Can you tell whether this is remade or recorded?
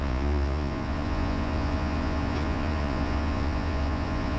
remade